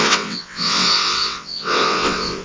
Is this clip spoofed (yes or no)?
yes